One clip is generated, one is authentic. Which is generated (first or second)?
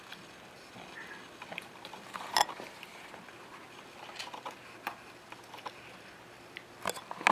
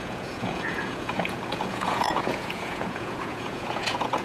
second